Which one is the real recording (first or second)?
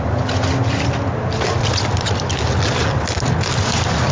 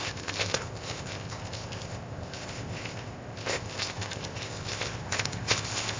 first